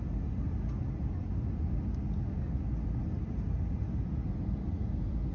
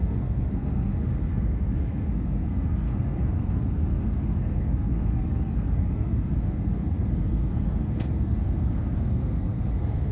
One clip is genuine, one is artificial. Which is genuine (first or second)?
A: first